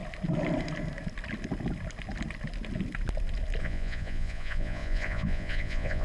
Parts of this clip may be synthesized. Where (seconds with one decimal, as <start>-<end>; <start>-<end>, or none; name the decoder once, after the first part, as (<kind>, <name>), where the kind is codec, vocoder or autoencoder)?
3.6-6.0 (vocoder, Vocos)